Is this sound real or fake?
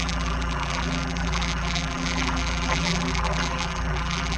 fake